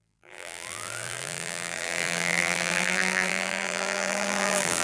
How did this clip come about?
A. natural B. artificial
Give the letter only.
B